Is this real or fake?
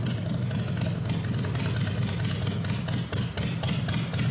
real